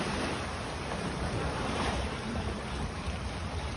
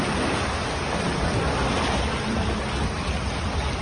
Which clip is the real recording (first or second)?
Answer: second